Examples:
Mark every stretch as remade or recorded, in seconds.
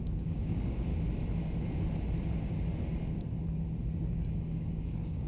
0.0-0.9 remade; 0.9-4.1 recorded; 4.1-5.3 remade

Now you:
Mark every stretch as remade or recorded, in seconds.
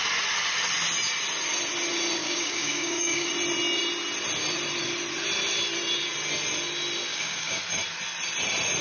0.0-2.2 recorded; 2.2-3.3 remade; 3.3-7.1 recorded; 7.1-7.6 remade; 7.6-8.8 recorded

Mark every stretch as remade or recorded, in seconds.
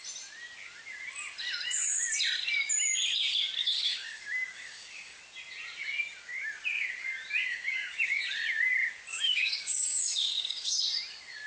0.0-3.6 recorded; 3.6-5.2 remade; 5.2-7.5 recorded; 7.5-8.2 remade; 8.2-9.1 recorded; 9.1-10.8 remade; 10.8-11.5 recorded